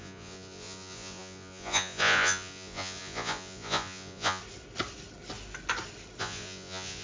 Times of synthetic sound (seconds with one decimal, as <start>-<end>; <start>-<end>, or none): 0.0-4.4; 6.2-7.0